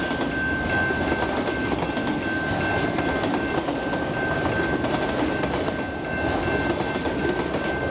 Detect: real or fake real